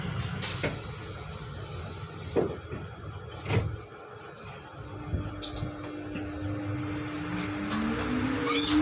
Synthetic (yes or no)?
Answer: no